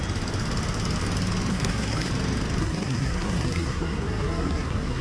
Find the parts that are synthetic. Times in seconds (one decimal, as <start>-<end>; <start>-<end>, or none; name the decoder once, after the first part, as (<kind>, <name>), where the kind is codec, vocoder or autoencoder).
1.5-2.1 (codec, SNAC); 2.6-5.0

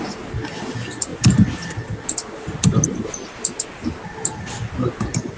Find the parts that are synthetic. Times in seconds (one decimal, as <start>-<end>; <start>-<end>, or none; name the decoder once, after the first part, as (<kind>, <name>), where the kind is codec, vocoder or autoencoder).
none

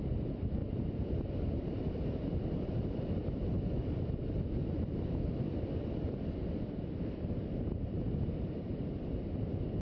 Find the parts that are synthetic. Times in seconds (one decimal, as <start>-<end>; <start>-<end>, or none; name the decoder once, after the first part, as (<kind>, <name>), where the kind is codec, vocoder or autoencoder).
none

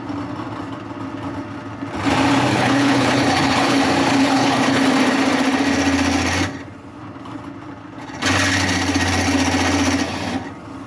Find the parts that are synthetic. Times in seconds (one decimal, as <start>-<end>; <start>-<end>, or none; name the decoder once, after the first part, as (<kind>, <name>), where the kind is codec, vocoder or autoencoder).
2.5-3.8 (codec, HILCodec); 4.2-4.8

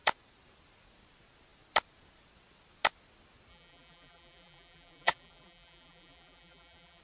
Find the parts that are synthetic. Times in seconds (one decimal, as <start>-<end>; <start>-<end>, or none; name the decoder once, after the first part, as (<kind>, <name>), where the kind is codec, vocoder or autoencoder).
3.5-7.0 (vocoder, BigVGAN v2)

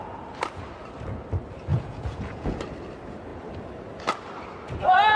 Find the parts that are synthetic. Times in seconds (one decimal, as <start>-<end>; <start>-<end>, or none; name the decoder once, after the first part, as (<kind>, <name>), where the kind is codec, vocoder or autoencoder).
1.7-2.6 (vocoder, Vocos)